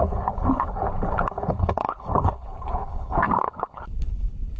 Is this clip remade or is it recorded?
remade